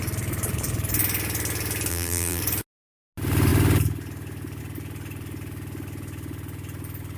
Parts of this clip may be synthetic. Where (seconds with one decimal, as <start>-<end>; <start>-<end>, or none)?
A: 1.9-2.4